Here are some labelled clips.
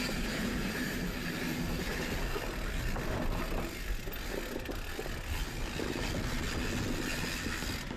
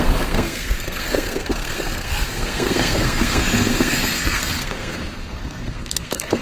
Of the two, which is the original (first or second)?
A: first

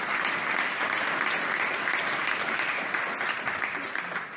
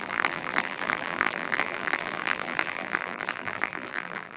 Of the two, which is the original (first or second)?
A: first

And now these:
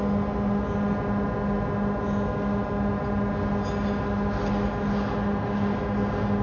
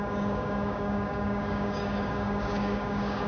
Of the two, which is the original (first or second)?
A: first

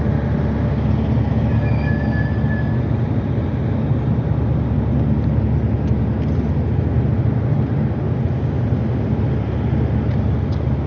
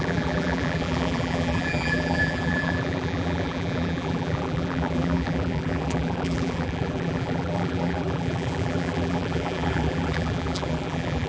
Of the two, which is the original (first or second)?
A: first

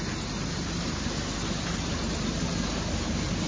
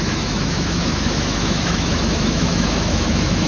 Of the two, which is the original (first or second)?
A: first